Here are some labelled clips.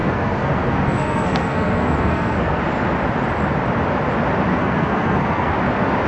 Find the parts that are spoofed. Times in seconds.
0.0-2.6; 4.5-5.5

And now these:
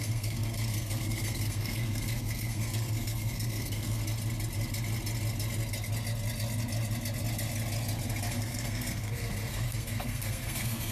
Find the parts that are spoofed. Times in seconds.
0.0-4.0; 8.3-10.9

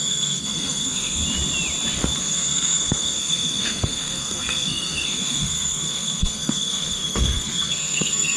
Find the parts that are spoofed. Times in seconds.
0.0-1.2; 2.2-8.4

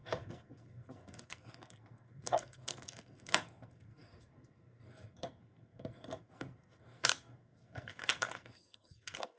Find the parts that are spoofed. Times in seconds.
0.0-9.4

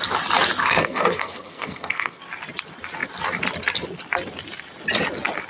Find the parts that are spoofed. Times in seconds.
0.6-2.2

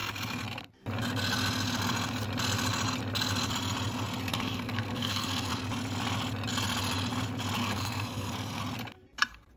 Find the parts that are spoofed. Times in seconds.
4.3-5.5; 7.6-8.6

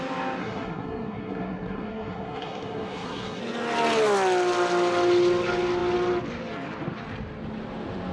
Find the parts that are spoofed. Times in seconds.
0.4-3.4

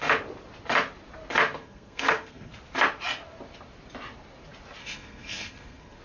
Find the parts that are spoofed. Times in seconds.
1.6-2.5; 4.8-6.0